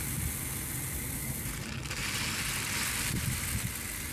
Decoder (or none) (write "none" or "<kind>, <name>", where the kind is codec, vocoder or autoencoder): none